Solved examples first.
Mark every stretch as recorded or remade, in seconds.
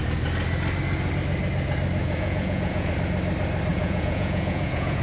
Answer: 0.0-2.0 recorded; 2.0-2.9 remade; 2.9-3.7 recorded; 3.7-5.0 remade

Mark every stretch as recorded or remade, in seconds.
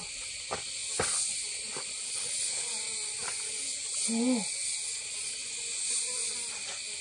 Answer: 0.0-5.4 recorded; 5.4-6.0 remade; 6.0-7.0 recorded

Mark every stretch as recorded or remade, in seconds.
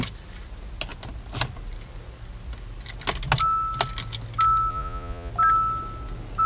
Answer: 0.0-4.7 recorded; 4.7-5.3 remade; 5.3-6.5 recorded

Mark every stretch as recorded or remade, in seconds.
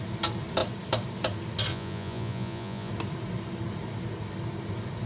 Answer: 0.0-1.7 recorded; 1.7-2.9 remade; 2.9-5.1 recorded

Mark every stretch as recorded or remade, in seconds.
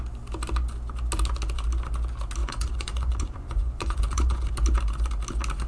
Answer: 0.0-2.4 recorded; 2.4-4.5 remade; 4.5-5.7 recorded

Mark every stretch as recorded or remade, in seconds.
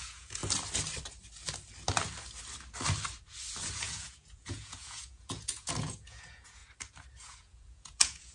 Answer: 0.0-0.4 remade; 0.4-3.8 recorded; 3.8-6.6 remade; 6.6-7.2 recorded; 7.2-8.3 remade